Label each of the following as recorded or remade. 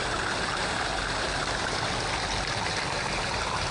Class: recorded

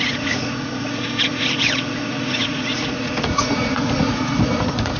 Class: remade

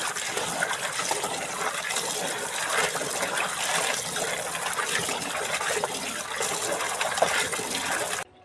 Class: recorded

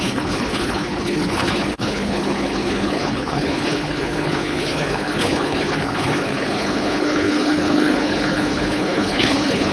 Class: remade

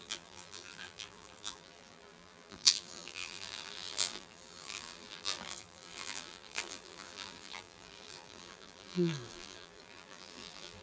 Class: remade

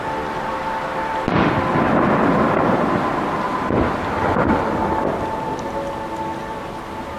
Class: recorded